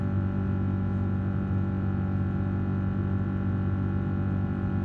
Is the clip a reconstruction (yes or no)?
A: no